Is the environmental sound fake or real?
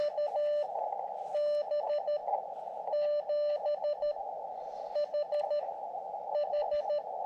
real